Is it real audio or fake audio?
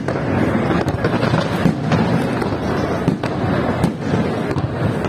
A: real